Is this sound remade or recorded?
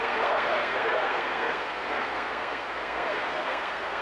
remade